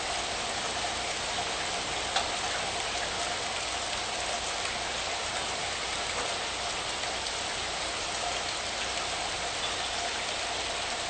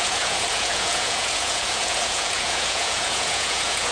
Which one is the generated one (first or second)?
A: second